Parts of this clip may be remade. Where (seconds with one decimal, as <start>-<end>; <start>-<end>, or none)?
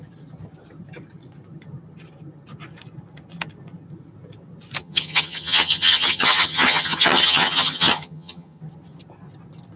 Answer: 4.8-8.6